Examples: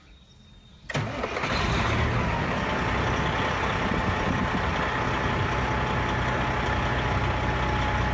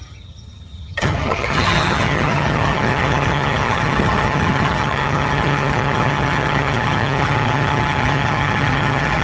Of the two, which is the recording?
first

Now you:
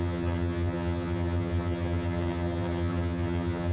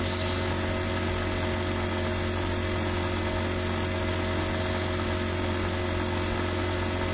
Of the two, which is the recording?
second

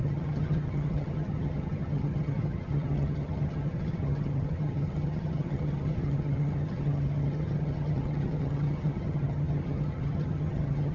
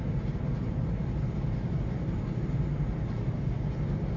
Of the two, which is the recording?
second